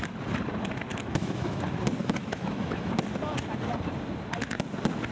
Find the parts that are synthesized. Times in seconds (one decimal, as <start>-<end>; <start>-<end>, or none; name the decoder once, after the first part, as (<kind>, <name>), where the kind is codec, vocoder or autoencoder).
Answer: 0.9-1.6 (autoencoder, DAC-VAE); 2.0-2.9